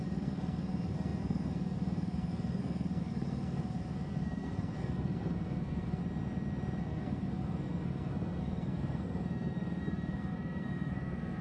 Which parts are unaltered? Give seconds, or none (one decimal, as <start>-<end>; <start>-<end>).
6.0-6.8